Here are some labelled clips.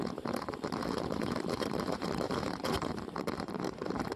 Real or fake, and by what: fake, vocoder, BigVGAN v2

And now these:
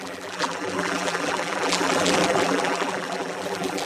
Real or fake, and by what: fake, vocoder, BigVGAN v2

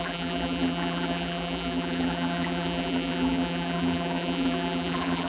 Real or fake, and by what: fake, vocoder, BigVGAN v2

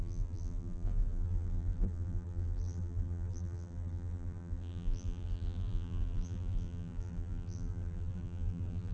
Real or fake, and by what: fake, vocoder, BigVGAN v2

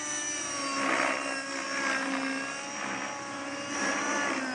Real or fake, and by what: real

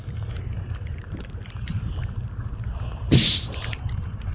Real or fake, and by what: fake, vocoder, BigVGAN v2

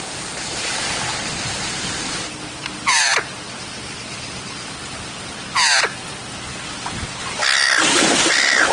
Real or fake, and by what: fake, vocoder, BigVGAN v2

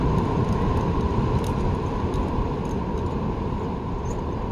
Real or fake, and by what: fake, vocoder, BigVGAN v2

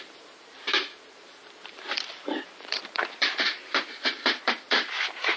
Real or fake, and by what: fake, vocoder, BigVGAN v2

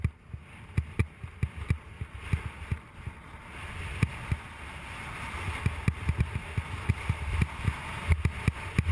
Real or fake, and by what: real